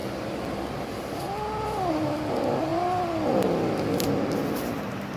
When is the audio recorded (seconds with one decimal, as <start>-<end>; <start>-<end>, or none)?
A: 0.0-5.2